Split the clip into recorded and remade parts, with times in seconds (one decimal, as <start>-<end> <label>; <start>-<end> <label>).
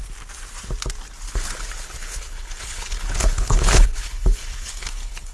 0.0-1.3 recorded; 1.3-5.3 remade